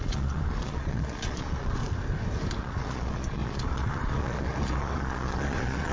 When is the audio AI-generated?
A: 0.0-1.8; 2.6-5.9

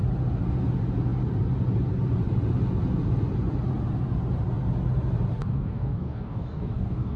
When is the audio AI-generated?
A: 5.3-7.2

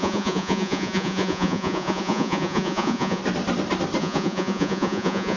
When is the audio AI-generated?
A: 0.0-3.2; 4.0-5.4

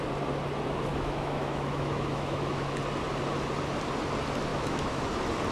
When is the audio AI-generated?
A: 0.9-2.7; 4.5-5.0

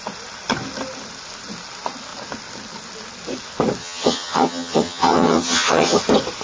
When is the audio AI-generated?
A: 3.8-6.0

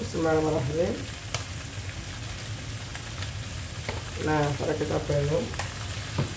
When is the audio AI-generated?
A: none

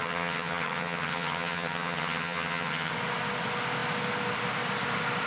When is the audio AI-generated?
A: 0.0-2.9

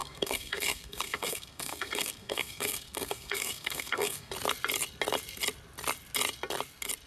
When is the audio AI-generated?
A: 0.0-4.3